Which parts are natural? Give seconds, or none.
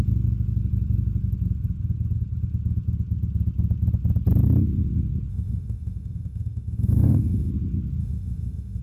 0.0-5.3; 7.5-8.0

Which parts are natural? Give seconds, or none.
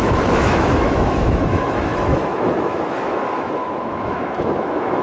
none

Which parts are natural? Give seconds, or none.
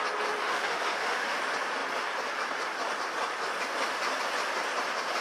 0.0-0.4; 1.4-5.2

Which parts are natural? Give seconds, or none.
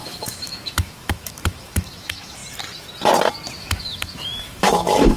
2.4-3.6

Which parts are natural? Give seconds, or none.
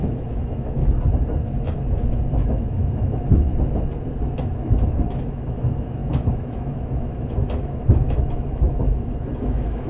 0.8-2.3; 3.5-4.4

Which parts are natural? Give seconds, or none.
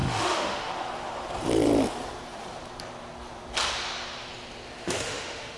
0.7-4.8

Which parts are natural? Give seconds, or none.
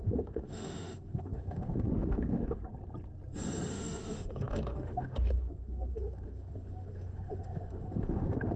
2.6-3.7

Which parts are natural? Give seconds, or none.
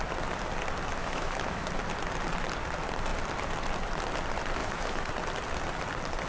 0.0-1.0; 1.7-4.6; 5.1-6.3